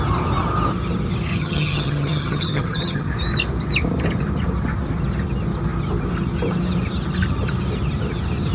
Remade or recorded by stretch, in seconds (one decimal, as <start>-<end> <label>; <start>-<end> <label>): 0.0-1.3 recorded; 1.3-3.1 remade; 3.1-8.5 recorded